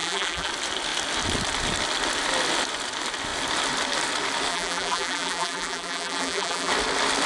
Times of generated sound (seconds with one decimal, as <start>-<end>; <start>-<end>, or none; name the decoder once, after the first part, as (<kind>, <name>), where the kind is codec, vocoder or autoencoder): 0.0-0.5 (vocoder, BigVGAN v2); 4.5-6.7